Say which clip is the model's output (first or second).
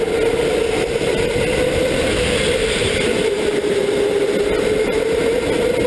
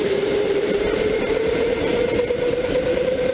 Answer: second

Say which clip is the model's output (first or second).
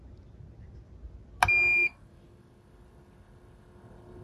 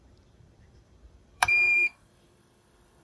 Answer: second